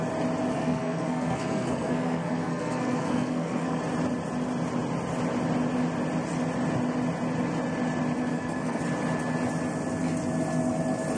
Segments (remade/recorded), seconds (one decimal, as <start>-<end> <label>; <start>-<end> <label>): 0.0-0.5 recorded; 0.5-3.8 remade; 3.8-8.3 recorded; 8.3-8.8 remade; 8.8-11.2 recorded